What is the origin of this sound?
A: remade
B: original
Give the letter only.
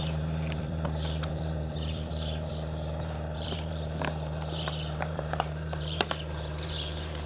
A